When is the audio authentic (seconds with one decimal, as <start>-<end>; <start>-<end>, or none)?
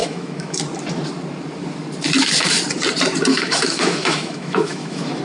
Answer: 0.6-3.3